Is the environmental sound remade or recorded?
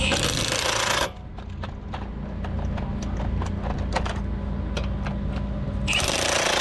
recorded